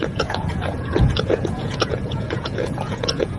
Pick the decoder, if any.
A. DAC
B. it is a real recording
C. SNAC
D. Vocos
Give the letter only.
D